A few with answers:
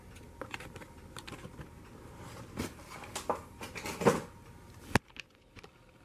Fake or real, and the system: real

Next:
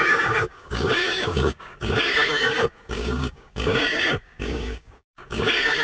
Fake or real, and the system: fake, codec, DAC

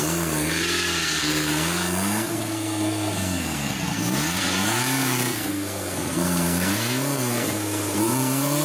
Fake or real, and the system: fake, codec, SNAC